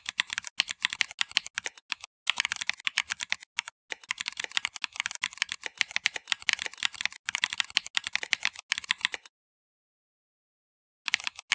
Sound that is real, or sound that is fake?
real